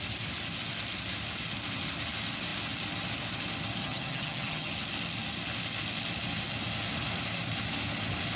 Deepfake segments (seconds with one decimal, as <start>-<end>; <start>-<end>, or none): 3.8-4.7